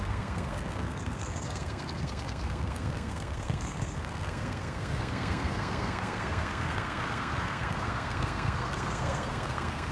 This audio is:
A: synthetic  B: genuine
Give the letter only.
A